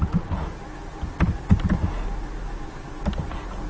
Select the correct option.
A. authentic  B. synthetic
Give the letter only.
A